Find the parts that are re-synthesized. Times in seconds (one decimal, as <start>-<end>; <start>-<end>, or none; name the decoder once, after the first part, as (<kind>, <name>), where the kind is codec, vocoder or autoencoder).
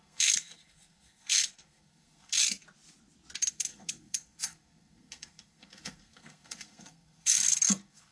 0.0-2.4 (codec, SNAC); 3.5-8.1